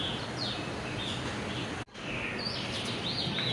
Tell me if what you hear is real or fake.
real